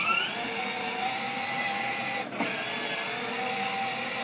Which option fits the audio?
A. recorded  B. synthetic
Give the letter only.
A